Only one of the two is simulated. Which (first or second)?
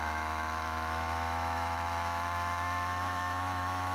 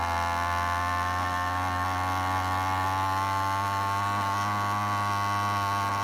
first